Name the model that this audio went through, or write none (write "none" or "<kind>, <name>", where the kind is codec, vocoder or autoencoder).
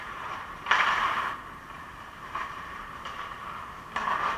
vocoder, BigVGAN v2